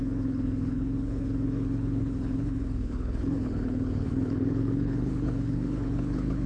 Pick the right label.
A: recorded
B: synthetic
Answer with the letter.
B